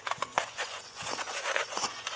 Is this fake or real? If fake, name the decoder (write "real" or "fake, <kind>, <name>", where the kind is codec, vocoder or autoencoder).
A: fake, vocoder, Vocos